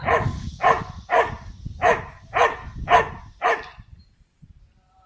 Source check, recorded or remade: recorded